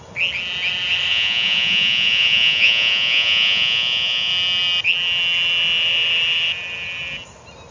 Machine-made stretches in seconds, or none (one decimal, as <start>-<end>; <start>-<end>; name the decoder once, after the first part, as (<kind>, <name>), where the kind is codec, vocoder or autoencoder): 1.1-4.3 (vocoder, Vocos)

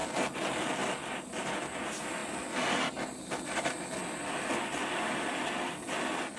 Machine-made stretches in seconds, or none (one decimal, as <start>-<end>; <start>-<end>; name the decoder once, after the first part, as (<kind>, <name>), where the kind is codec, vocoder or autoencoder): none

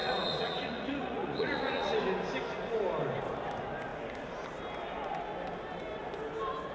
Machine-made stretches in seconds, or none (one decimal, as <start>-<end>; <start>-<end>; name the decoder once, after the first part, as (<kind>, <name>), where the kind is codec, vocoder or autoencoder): 0.0-2.0 (vocoder, Vocos)

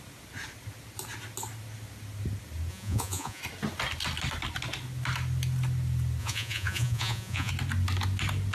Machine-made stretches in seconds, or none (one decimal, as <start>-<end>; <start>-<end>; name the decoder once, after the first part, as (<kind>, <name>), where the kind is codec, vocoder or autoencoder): 2.7-3.4 (vocoder, Vocos); 6.2-7.5

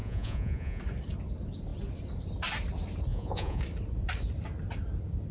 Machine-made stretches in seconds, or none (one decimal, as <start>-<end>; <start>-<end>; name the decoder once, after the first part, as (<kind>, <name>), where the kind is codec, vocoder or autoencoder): 0.0-0.8 (vocoder, Vocos); 3.1-3.6

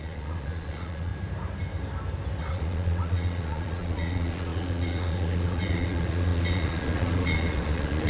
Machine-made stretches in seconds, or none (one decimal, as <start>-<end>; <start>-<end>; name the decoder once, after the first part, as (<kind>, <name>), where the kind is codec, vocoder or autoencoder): 0.0-1.1 (vocoder, Vocos); 2.4-8.1